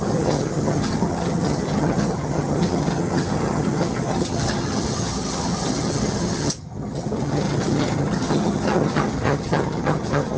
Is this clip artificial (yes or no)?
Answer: yes